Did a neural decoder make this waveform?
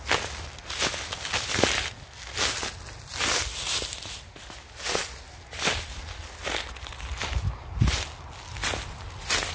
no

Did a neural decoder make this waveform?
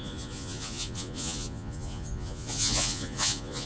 yes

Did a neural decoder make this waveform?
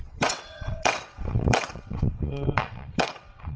yes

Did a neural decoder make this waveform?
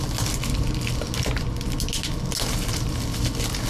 no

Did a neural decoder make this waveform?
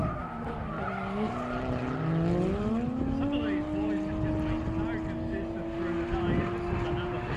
no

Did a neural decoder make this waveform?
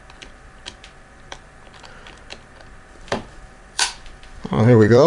yes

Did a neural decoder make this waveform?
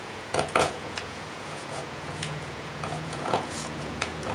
yes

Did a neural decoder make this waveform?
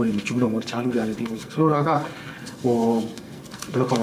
yes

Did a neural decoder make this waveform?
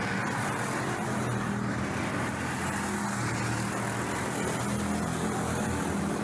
no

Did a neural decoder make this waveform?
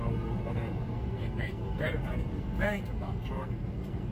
yes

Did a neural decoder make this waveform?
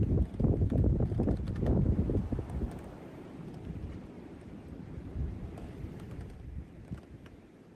no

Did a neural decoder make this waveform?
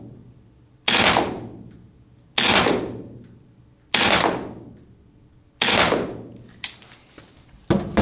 no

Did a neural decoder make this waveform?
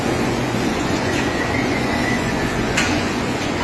yes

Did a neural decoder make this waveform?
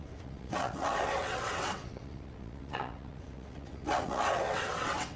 yes